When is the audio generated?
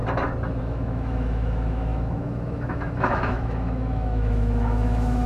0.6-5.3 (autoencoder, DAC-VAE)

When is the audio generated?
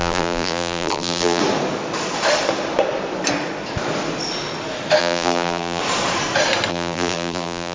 0.0-1.4 (vocoder, BigVGAN v2); 5.0-5.8; 6.7-7.7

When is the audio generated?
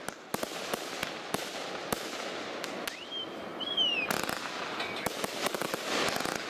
1.0-1.7 (vocoder, BigVGAN v2)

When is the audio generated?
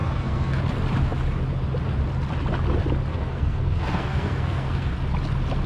0.0-0.6 (codec, SNAC); 3.1-4.9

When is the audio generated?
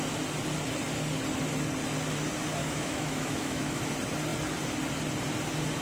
2.6-3.8 (autoencoder, DAC-VAE)